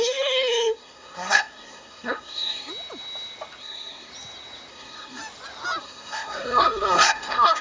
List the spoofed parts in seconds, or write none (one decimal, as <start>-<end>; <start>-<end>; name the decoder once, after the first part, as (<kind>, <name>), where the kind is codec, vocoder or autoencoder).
0.0-2.7 (codec, SNAC); 3.6-4.1; 4.7-5.2; 5.8-7.6